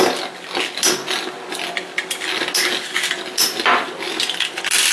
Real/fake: real